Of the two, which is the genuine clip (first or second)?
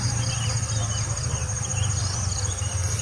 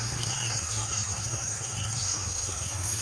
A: first